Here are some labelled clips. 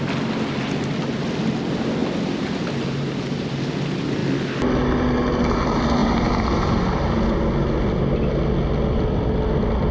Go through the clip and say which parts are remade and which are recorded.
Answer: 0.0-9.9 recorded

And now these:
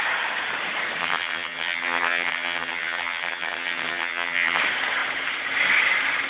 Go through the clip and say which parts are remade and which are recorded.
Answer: 0.0-1.0 recorded; 1.0-4.6 remade; 4.6-6.3 recorded

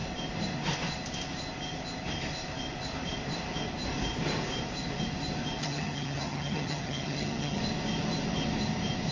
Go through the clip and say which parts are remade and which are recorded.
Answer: 0.0-5.6 recorded; 5.6-7.6 remade; 7.6-9.1 recorded